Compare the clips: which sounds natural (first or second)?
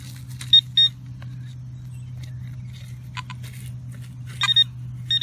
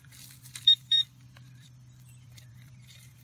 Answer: first